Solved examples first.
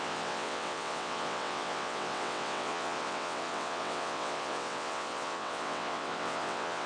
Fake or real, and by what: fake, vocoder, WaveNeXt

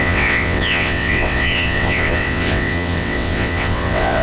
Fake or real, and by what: fake, vocoder, WaveNeXt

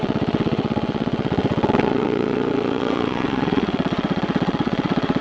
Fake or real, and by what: fake, vocoder, WaveNeXt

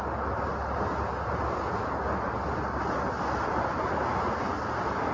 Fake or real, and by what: real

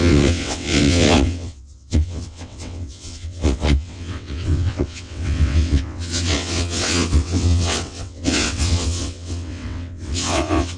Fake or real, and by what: fake, vocoder, WaveNeXt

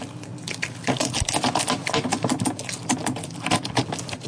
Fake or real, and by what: real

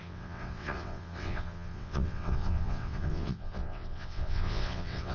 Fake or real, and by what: fake, vocoder, WaveNeXt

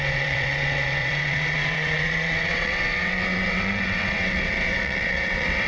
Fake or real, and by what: fake, vocoder, WaveNeXt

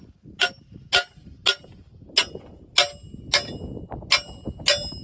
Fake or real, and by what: real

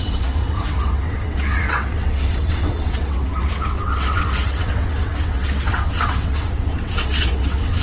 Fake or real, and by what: fake, vocoder, WaveNeXt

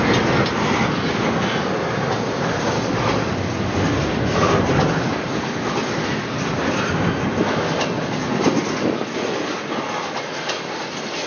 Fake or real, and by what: real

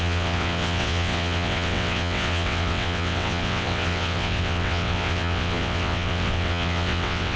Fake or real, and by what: fake, vocoder, WaveNeXt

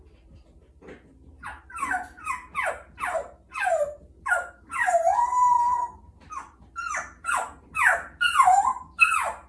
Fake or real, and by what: real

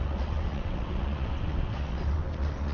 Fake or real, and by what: fake, vocoder, WaveNeXt